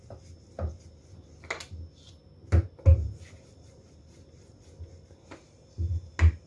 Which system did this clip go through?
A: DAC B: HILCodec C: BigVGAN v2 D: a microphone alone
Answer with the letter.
D